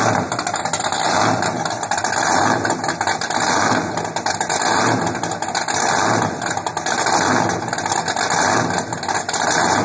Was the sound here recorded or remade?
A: recorded